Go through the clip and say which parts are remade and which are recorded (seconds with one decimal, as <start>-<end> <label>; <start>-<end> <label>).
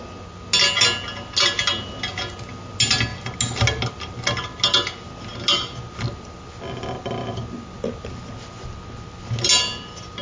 0.0-10.2 recorded